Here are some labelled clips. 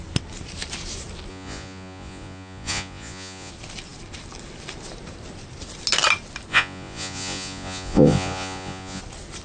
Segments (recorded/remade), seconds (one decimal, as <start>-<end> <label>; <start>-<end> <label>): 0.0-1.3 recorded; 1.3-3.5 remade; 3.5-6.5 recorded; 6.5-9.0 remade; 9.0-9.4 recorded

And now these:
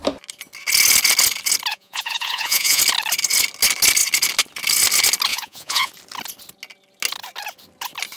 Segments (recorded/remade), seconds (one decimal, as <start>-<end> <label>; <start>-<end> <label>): 0.0-1.7 recorded; 1.7-2.8 remade; 2.8-5.3 recorded; 5.3-5.9 remade; 5.9-8.2 recorded

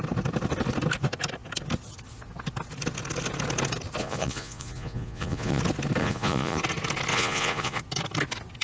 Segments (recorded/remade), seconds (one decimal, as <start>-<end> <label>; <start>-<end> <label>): 0.0-4.0 recorded; 4.0-5.6 remade; 5.6-6.0 recorded; 6.0-6.6 remade; 6.6-7.1 recorded; 7.1-7.8 remade; 7.8-8.6 recorded

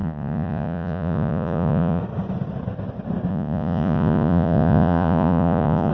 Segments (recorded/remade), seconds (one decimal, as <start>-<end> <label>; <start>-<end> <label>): 0.0-2.0 remade; 2.0-3.3 recorded; 3.3-5.9 remade

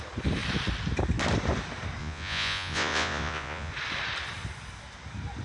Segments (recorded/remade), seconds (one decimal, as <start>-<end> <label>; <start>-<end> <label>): 0.0-2.0 recorded; 2.0-3.7 remade; 3.7-5.4 recorded

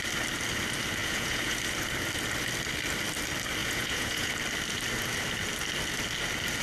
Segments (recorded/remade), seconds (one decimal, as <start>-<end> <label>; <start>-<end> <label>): 0.0-1.0 recorded; 1.0-1.6 remade; 1.6-3.6 recorded; 3.6-4.3 remade; 4.3-6.6 recorded

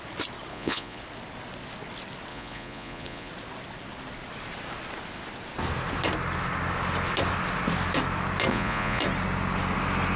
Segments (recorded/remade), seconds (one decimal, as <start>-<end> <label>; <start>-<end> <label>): 0.0-0.5 recorded; 0.5-1.0 remade; 1.0-2.3 recorded; 2.3-3.3 remade; 3.3-8.5 recorded; 8.5-9.0 remade; 9.0-10.2 recorded

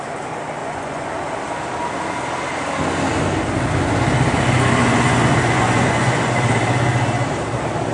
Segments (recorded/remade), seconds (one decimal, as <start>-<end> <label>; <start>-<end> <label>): 0.0-0.6 recorded; 0.6-1.1 remade; 1.1-4.8 recorded; 4.8-6.3 remade; 6.3-7.9 recorded